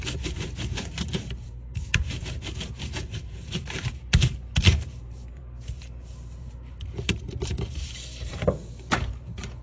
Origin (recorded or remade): remade